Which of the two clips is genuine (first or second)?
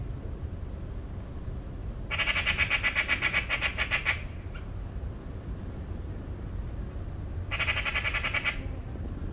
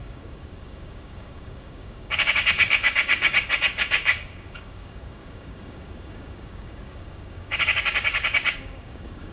first